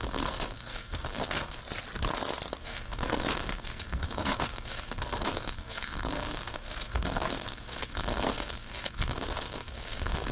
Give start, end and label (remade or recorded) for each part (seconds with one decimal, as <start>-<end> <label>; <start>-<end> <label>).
0.0-1.6 remade; 1.6-2.6 recorded; 2.6-10.3 remade